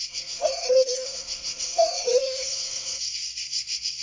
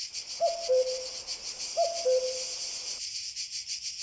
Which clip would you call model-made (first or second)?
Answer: first